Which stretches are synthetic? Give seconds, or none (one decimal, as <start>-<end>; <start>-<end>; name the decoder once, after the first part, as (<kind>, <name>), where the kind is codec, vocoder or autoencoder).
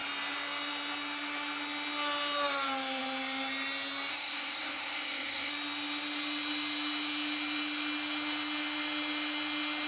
4.1-5.5 (codec, SNAC)